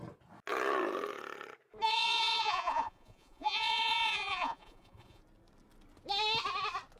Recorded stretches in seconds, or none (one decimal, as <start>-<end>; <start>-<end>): 0.0-1.9; 5.2-7.0